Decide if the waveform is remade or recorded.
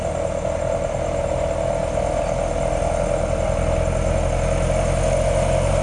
recorded